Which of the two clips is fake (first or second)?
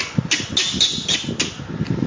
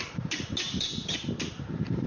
second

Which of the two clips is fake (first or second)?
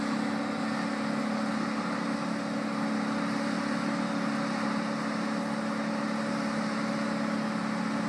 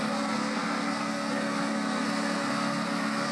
second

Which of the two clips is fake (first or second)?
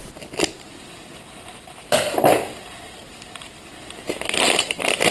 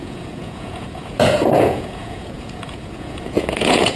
second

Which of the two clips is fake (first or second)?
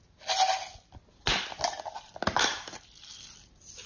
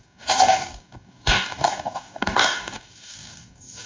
second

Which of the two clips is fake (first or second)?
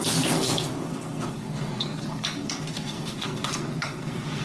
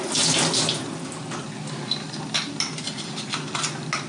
first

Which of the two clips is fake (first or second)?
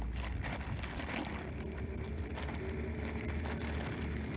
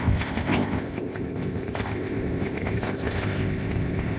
second